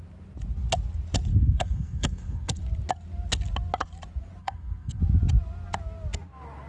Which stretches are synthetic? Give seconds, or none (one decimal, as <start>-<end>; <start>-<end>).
1.3-2.6; 4.4-5.0